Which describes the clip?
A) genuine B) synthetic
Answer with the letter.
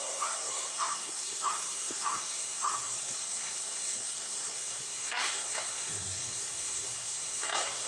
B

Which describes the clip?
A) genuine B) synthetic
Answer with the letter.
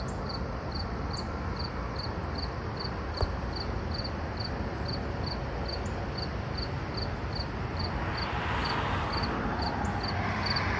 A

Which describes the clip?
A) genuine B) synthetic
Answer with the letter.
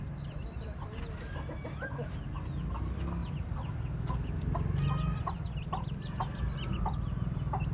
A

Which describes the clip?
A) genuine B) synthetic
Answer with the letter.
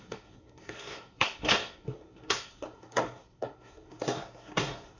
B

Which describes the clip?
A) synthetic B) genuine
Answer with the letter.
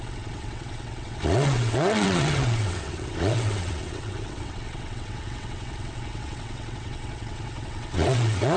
A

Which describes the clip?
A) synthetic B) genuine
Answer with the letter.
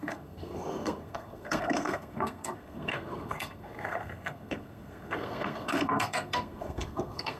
A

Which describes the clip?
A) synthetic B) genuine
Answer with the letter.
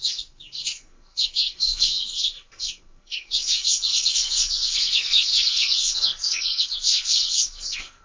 A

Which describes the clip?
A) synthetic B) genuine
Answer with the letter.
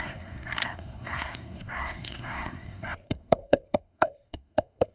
A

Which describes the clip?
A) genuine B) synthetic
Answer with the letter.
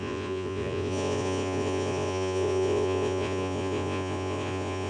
B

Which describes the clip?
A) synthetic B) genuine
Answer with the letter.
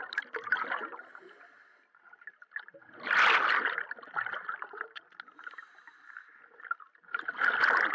B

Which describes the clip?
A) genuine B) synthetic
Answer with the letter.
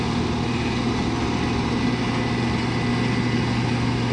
A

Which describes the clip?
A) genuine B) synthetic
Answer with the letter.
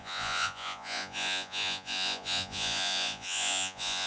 B